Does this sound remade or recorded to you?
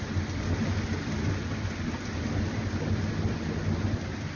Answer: recorded